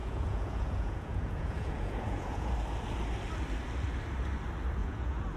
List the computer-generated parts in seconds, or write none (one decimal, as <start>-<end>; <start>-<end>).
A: 0.0-2.5; 4.8-5.4